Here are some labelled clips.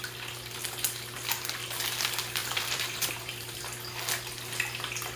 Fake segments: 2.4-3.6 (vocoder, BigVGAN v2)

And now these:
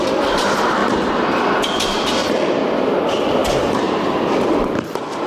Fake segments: none

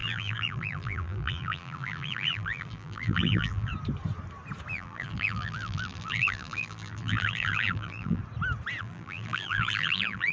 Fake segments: 0.0-3.7 (vocoder, BigVGAN v2); 4.7-8.2; 8.8-10.3

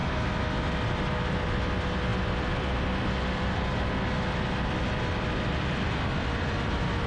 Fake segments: none

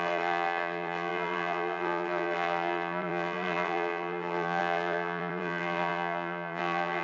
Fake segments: 0.0-7.0 (vocoder, BigVGAN v2)

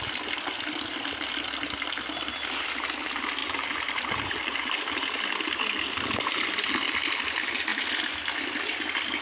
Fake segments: 3.4-4.8 (vocoder, BigVGAN v2)